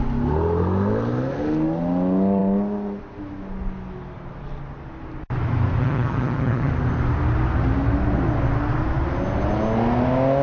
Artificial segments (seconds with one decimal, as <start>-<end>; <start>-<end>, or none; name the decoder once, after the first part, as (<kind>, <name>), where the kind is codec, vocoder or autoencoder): 5.8-6.7 (vocoder, HiFi-GAN)